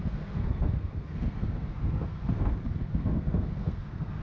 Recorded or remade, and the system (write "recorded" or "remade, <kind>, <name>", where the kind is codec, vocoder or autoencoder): remade, codec, SNAC